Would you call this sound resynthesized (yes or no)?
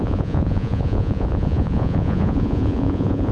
yes